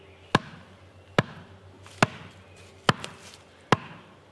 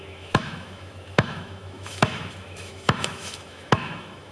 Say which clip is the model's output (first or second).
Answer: second